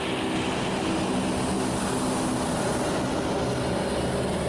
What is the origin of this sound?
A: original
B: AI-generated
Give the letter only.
A